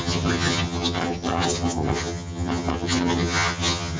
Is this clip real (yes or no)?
no